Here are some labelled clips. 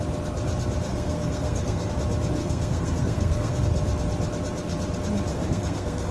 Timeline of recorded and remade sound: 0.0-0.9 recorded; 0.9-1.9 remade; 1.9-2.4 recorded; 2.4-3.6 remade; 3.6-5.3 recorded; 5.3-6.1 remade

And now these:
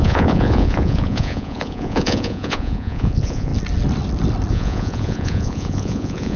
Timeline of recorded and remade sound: 0.0-3.5 remade; 3.5-4.5 recorded; 4.5-6.4 remade

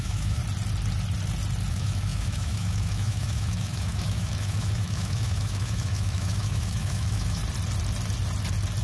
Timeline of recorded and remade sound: 0.0-0.4 remade; 0.4-1.7 recorded; 1.7-7.4 remade; 7.4-8.8 recorded

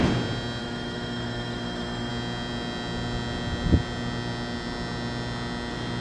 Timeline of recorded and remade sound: 0.0-0.6 recorded; 0.6-2.1 remade; 2.1-6.0 recorded

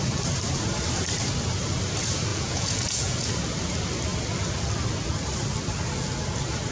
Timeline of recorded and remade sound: 0.0-2.3 recorded; 2.3-3.3 remade; 3.3-6.7 recorded

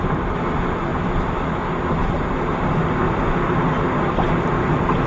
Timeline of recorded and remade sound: 0.0-0.9 remade; 0.9-4.0 recorded; 4.0-5.1 remade

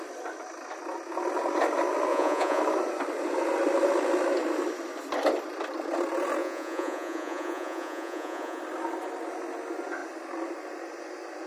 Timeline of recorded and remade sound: 0.0-2.1 recorded; 2.1-2.6 remade; 2.6-6.4 recorded; 6.4-8.6 remade; 8.6-11.5 recorded

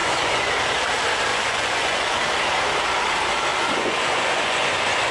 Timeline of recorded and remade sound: 0.0-0.5 remade; 0.5-1.3 recorded; 1.3-2.2 remade; 2.2-3.5 recorded; 3.5-5.1 remade